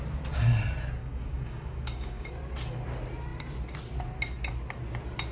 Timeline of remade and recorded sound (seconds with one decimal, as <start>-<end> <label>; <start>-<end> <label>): 0.0-1.0 recorded; 1.0-2.3 remade; 2.3-5.3 recorded